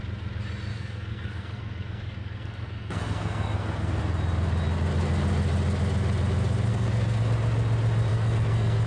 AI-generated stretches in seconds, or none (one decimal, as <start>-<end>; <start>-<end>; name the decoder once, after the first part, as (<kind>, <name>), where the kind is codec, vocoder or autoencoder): 0.7-4.0 (codec, SNAC); 6.7-7.2; 8.1-8.9

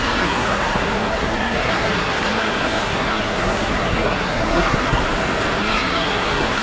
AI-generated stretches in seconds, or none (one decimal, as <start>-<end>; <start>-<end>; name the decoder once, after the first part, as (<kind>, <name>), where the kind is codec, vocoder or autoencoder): 0.0-5.0 (codec, SNAC); 5.6-6.6

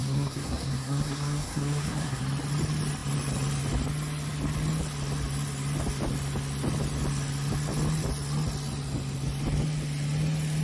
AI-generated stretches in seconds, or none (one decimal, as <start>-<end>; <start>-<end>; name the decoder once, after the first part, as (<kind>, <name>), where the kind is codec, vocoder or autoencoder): 0.0-2.2 (codec, SNAC)